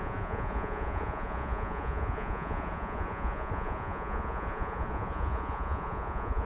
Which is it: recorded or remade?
remade